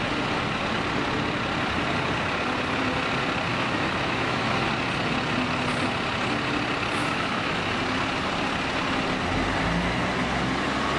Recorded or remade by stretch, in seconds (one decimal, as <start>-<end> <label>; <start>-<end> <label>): 0.0-3.5 recorded; 3.5-4.7 remade; 4.7-7.0 recorded; 7.0-7.6 remade; 7.6-11.0 recorded